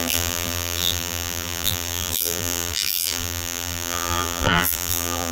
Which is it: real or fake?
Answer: fake